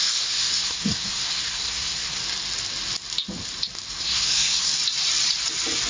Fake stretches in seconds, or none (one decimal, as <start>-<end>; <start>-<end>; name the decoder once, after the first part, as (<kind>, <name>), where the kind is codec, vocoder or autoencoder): 0.0-2.2 (codec, SNAC); 3.9-4.7